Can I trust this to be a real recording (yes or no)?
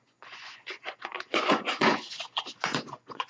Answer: no